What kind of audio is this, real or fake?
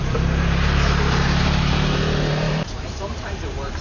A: fake